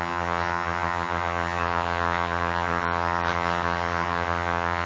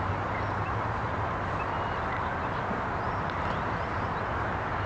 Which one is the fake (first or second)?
first